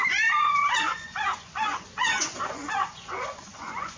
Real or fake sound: fake